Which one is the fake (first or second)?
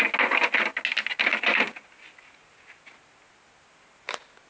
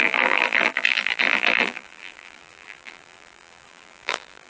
second